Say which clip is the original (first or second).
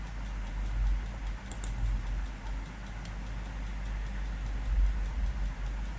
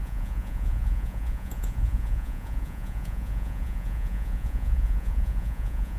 first